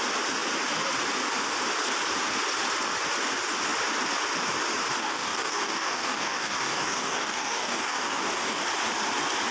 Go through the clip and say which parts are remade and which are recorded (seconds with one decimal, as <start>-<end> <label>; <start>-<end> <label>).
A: 0.0-5.0 recorded; 5.0-8.6 remade; 8.6-9.5 recorded